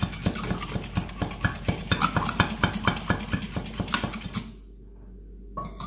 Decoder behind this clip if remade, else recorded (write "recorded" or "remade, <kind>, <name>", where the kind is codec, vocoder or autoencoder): recorded